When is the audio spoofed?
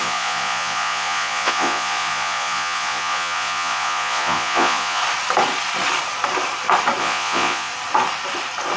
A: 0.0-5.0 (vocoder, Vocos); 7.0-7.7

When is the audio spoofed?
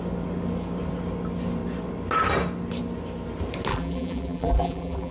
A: 3.7-5.1 (vocoder, BigVGAN v2)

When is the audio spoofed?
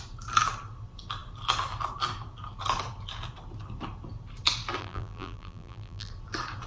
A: 4.8-6.1 (vocoder, BigVGAN v2)